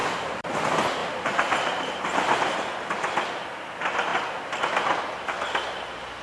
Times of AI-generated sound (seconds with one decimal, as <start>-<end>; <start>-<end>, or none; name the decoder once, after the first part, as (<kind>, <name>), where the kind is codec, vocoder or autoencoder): 0.0-0.6 (vocoder, BigVGAN v2); 1.0-2.9